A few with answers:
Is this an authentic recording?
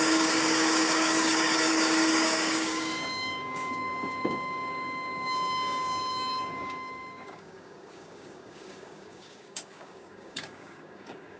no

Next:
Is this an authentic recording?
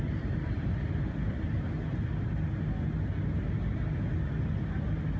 yes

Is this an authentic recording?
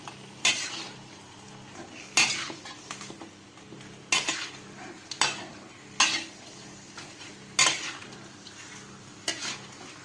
yes